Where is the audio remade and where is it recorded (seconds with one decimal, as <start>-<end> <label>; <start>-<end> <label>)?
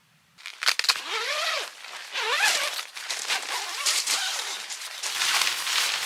0.0-2.9 recorded; 2.9-5.4 remade; 5.4-6.1 recorded